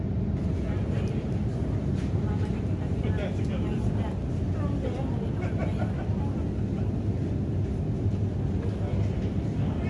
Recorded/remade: recorded